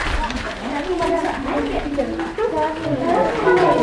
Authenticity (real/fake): real